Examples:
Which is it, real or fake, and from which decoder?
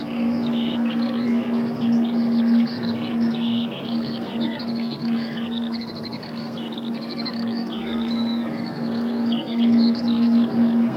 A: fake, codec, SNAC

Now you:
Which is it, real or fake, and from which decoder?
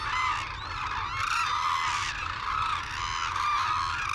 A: real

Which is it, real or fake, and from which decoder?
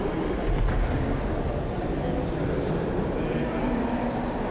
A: real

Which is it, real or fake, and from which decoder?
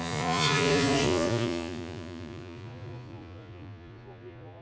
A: fake, vocoder, Vocos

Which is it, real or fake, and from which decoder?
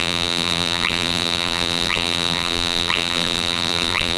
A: fake, vocoder, BigVGAN v2